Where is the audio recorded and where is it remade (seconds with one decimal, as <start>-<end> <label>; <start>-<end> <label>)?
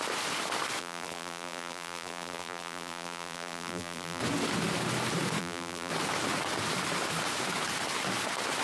0.0-0.8 recorded; 0.8-4.2 remade; 4.2-5.4 recorded; 5.4-5.9 remade; 5.9-8.6 recorded